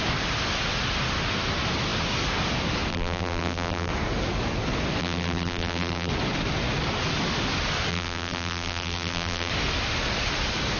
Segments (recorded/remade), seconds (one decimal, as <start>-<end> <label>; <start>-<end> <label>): 0.0-2.9 recorded; 2.9-3.9 remade; 3.9-5.0 recorded; 5.0-6.1 remade; 6.1-7.9 recorded; 7.9-9.5 remade; 9.5-10.8 recorded